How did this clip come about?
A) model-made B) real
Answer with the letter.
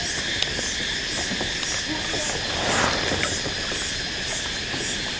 B